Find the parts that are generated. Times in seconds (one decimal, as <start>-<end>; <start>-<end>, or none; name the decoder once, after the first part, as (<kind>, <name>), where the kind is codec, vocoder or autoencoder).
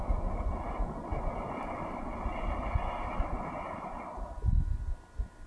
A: none